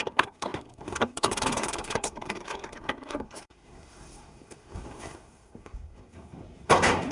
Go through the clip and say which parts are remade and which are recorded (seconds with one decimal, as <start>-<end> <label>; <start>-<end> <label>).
0.0-7.1 remade